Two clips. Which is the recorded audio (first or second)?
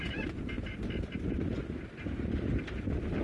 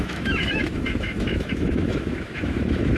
first